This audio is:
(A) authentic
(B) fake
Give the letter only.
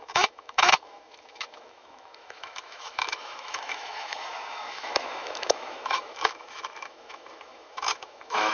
B